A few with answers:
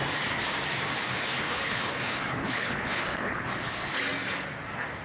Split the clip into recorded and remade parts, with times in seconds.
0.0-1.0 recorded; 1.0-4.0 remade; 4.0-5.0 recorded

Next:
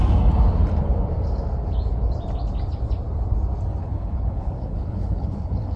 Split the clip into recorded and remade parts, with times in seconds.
0.0-3.8 recorded; 3.8-5.8 remade

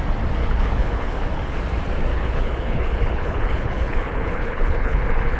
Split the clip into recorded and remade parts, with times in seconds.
0.0-0.4 recorded; 0.4-1.6 remade; 1.6-2.1 recorded; 2.1-5.4 remade

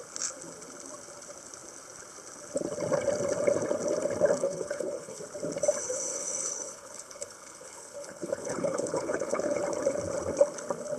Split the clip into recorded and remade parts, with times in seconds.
0.0-4.4 recorded; 4.4-5.2 remade; 5.2-5.8 recorded; 5.8-9.6 remade; 9.6-11.0 recorded

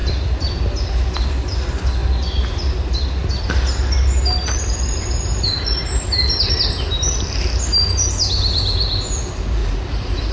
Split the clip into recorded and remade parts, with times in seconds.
0.0-10.3 recorded

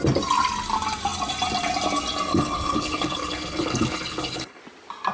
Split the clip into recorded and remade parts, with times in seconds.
0.0-2.3 recorded; 2.3-4.6 remade; 4.6-5.1 recorded

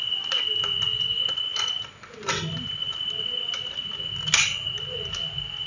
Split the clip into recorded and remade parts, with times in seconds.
0.0-5.7 recorded